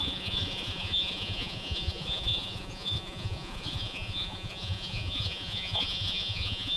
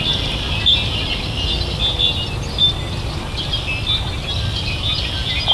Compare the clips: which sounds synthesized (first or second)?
first